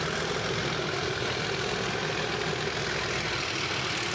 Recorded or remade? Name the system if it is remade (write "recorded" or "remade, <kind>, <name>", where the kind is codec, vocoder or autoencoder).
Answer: recorded